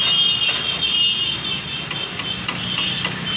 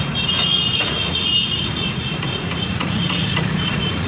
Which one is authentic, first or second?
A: first